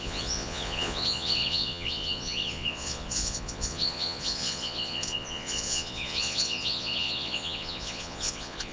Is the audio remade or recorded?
remade